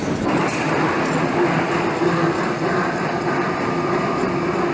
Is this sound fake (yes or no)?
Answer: no